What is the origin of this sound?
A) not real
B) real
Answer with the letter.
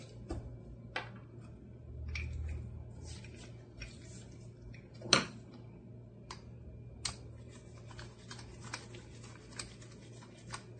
B